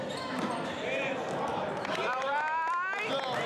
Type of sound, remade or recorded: recorded